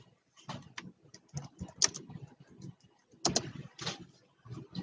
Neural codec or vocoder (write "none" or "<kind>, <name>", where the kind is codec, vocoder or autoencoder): none